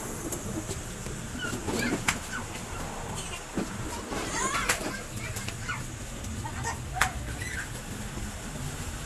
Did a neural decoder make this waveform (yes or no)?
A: no